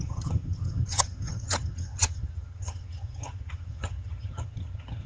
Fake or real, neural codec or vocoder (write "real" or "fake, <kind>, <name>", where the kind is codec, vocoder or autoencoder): fake, vocoder, HiFi-GAN